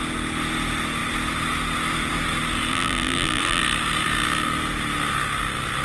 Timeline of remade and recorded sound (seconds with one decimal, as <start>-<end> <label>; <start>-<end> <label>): 0.0-2.7 recorded; 2.7-3.6 remade; 3.6-5.8 recorded